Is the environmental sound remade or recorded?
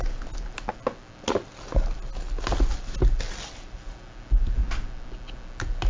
recorded